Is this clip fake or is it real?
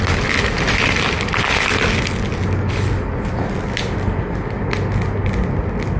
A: real